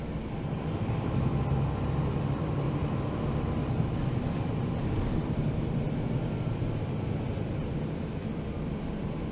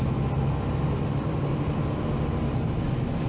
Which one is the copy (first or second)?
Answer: first